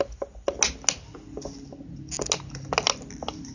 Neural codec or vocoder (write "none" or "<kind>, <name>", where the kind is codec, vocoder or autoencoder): none